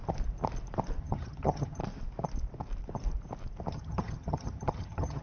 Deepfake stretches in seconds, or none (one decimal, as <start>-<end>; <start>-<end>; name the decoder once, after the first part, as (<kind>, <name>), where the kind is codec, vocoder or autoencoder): 1.0-1.8 (vocoder, HiFi-GAN); 3.7-5.2